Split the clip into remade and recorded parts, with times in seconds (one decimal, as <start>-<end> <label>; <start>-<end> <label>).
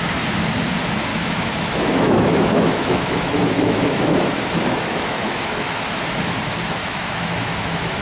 0.0-1.1 recorded; 1.1-5.9 remade; 5.9-6.8 recorded; 6.8-8.0 remade